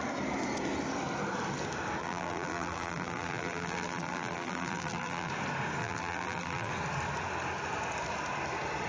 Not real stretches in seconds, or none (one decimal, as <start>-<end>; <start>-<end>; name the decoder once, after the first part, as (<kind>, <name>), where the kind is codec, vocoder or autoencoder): 2.0-5.3 (vocoder, BigVGAN v2); 5.8-6.7